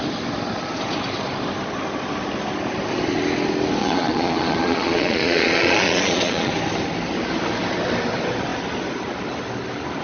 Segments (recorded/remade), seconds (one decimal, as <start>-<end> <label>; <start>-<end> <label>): 0.0-3.8 recorded; 3.8-6.5 remade; 6.5-10.0 recorded